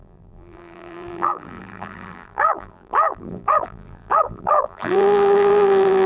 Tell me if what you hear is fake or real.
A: fake